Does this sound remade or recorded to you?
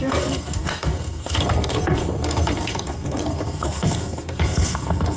remade